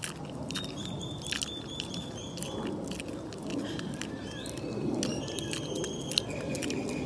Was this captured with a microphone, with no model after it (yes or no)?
yes